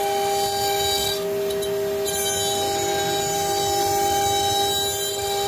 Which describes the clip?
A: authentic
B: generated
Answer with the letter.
A